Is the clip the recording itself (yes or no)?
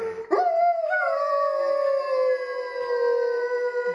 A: yes